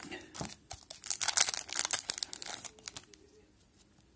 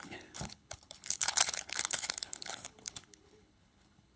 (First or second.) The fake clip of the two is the second